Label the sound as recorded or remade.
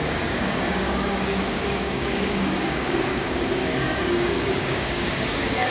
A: remade